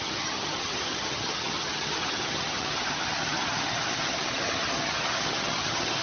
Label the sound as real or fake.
fake